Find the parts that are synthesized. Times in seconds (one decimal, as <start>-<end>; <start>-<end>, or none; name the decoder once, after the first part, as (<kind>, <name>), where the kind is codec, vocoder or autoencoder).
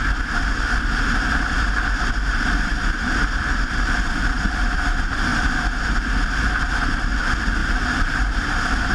2.7-3.7 (vocoder, BigVGAN v2); 5.3-6.5; 7.6-8.9